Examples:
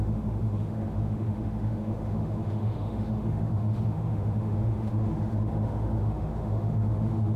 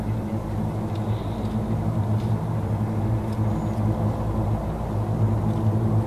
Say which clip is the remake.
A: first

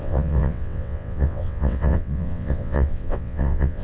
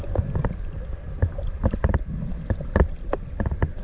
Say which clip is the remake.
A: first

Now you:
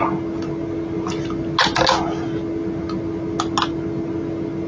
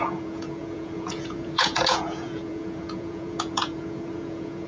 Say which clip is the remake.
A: second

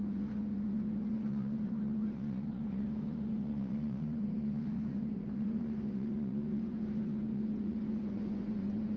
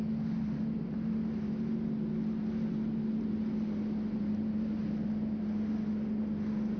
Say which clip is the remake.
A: first